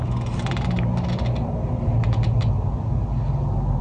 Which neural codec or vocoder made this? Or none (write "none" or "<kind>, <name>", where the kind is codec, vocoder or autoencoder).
none